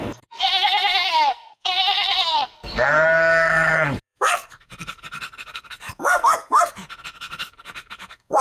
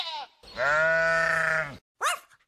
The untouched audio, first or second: second